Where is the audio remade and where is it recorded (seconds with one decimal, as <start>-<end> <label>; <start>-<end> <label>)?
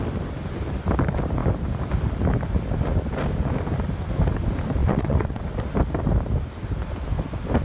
0.0-4.8 recorded; 4.8-5.4 remade; 5.4-7.6 recorded